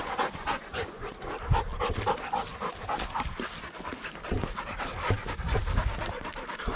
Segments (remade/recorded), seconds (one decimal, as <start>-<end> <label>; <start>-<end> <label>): 0.0-1.3 remade; 1.3-6.8 recorded